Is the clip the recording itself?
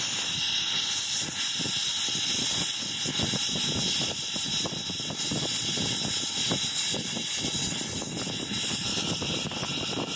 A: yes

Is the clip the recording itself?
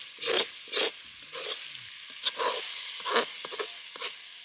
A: yes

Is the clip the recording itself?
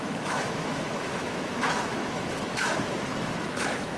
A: no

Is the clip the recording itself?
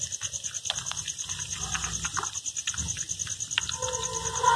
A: yes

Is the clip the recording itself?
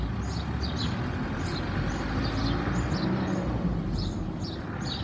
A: yes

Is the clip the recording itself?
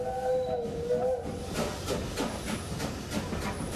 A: yes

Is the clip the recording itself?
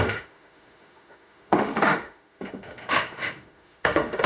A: no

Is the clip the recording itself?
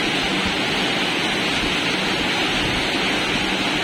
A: yes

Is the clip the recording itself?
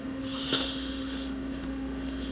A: no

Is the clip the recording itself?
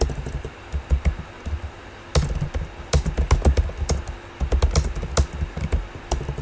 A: yes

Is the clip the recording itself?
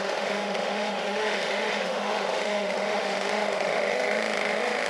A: no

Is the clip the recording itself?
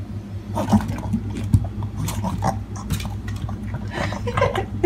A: yes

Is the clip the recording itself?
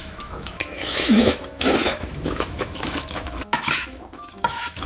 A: no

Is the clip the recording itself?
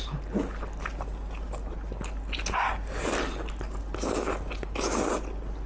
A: yes